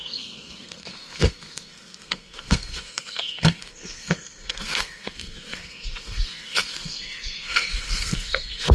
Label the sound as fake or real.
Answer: fake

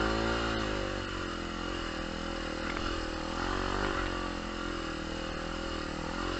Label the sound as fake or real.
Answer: real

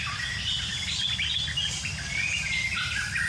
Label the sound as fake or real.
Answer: real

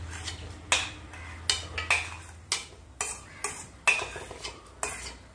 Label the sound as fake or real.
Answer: real